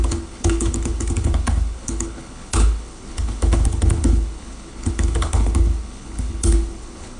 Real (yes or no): no